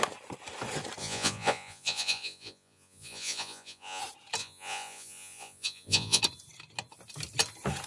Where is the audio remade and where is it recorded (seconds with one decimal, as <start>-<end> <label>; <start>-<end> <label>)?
0.0-1.0 recorded; 1.0-4.0 remade; 4.0-4.4 recorded; 4.4-6.2 remade; 6.2-7.9 recorded